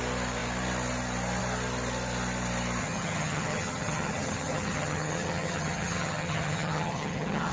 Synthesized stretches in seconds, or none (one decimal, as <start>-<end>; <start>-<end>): 2.8-7.5